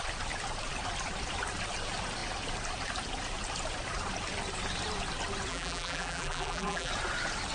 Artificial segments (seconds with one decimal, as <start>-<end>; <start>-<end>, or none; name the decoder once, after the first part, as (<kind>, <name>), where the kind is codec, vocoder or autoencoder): 5.5-6.9 (vocoder, BigVGAN v2)